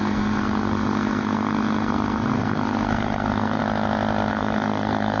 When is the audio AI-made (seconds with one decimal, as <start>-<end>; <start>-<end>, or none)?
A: 0.0-3.6; 4.3-5.2